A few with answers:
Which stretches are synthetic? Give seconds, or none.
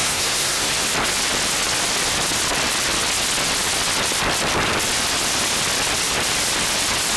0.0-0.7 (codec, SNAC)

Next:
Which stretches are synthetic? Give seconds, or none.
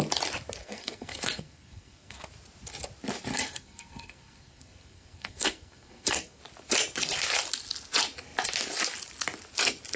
0.6-2.3 (codec, SNAC); 3.3-6.4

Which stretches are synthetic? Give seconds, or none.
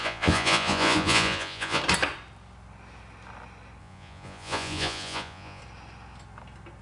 0.0-1.8 (vocoder, Vocos); 3.8-5.6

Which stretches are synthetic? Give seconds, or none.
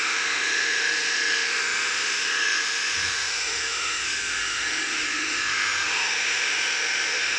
0.0-7.4 (autoencoder, DAC-VAE)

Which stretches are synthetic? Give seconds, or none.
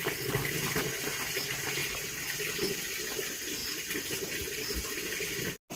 none